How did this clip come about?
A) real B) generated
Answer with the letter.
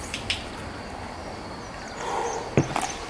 A